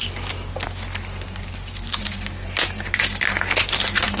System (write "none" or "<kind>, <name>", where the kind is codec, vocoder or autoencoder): none